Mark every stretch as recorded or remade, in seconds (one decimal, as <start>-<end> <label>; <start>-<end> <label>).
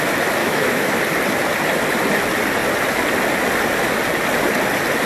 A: 0.0-0.4 recorded; 0.4-1.0 remade; 1.0-5.1 recorded